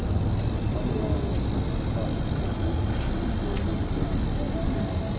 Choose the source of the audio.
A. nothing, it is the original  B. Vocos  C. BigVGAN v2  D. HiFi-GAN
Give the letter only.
A